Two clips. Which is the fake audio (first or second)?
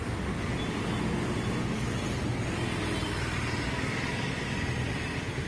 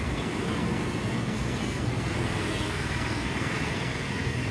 second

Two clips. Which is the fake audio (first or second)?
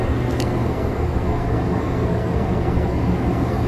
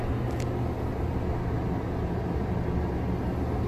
first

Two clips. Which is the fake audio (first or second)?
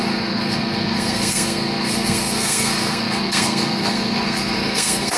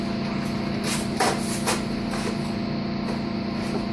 first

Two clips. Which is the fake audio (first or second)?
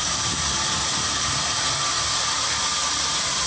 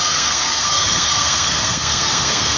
second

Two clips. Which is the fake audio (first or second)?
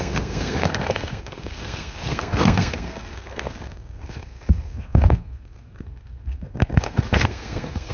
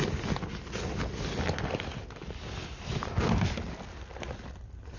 first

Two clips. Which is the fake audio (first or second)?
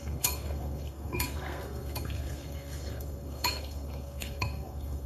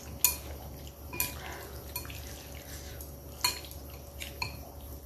first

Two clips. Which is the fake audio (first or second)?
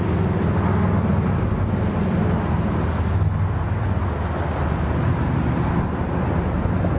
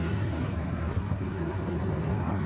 second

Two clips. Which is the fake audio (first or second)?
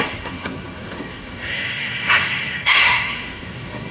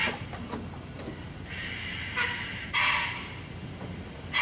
first